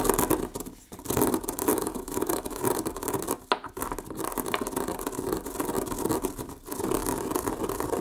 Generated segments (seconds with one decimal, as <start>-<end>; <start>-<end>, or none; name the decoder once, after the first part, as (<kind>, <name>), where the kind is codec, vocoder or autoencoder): 1.7-2.6 (autoencoder, DAC-VAE)